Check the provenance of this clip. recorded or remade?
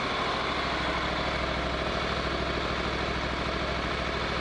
recorded